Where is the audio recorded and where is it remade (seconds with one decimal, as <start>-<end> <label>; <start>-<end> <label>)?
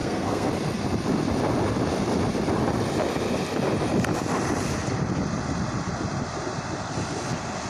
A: 0.0-0.5 remade; 0.5-7.7 recorded